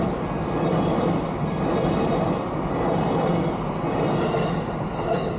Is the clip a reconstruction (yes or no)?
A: no